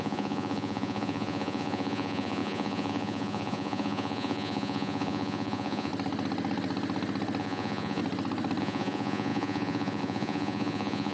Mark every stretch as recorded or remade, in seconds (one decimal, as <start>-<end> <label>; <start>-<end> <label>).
0.0-5.9 remade; 5.9-7.4 recorded; 7.4-8.0 remade; 8.0-8.6 recorded; 8.6-11.1 remade